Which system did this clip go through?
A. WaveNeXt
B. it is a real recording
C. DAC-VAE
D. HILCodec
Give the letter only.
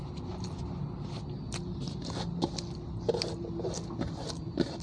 B